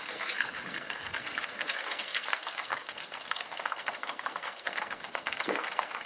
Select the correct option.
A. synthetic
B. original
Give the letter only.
A